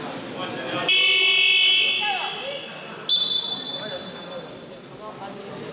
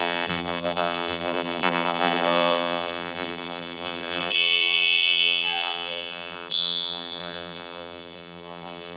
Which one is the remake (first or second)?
second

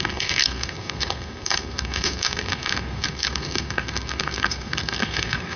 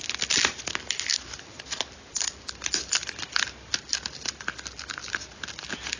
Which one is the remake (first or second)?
first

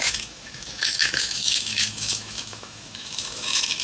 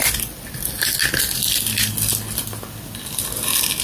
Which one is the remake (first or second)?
first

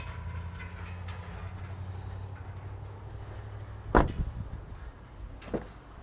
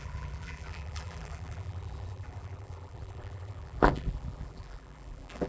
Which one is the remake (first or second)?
second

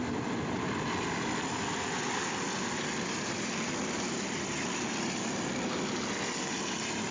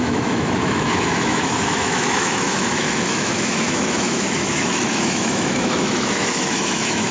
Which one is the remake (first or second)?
second